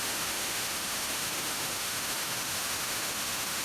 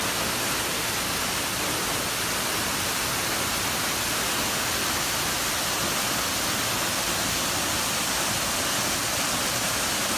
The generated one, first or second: first